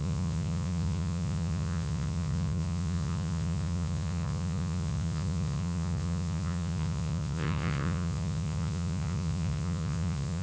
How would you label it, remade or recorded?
remade